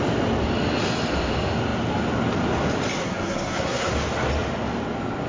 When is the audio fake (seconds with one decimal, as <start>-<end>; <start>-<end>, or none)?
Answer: 3.0-3.9